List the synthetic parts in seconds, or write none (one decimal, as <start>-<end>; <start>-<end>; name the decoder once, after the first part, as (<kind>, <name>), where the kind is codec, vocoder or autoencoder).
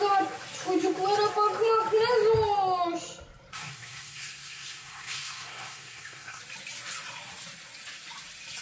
3.5-6.4 (codec, SNAC)